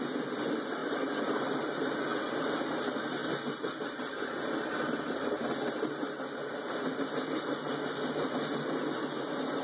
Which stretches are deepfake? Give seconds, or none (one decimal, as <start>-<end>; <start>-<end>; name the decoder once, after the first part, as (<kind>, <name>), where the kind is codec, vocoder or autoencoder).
0.8-2.0 (vocoder, BigVGAN v2)